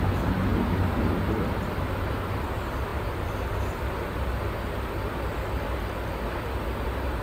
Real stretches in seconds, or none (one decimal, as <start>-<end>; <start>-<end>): 0.0-2.9; 3.9-7.2